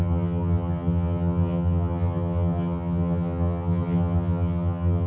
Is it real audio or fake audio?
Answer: fake